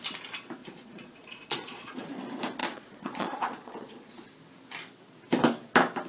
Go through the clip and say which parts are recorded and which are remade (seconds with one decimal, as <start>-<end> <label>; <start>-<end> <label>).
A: 0.0-0.6 recorded; 0.6-2.1 remade; 2.1-2.6 recorded; 2.6-4.3 remade; 4.3-6.1 recorded